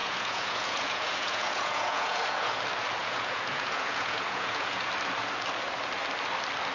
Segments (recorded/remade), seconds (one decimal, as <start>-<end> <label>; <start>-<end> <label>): 0.0-2.6 remade; 2.6-3.0 recorded; 3.0-4.9 remade; 4.9-6.7 recorded